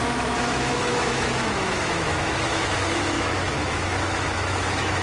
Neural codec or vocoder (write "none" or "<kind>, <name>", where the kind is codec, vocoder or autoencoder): autoencoder, DAC-VAE